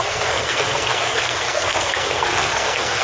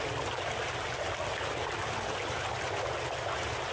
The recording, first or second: second